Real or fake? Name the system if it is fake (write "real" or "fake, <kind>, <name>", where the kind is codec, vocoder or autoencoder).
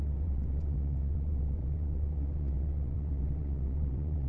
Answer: fake, vocoder, WaveNeXt